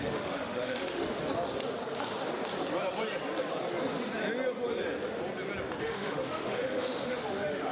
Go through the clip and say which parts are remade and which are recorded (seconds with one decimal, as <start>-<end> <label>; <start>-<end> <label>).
0.0-1.2 remade; 1.2-5.8 recorded; 5.8-7.7 remade